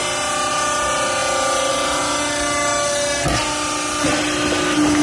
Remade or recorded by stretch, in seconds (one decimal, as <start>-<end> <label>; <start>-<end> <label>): 0.0-5.0 recorded